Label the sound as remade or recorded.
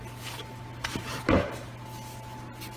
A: recorded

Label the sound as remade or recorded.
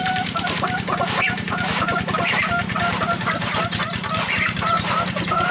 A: remade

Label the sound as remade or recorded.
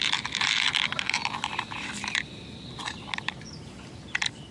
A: recorded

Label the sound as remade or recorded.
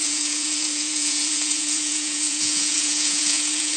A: remade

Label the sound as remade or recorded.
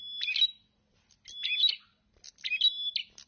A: recorded